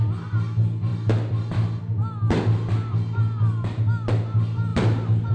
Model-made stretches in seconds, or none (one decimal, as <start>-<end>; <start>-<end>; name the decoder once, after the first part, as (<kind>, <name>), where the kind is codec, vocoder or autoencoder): none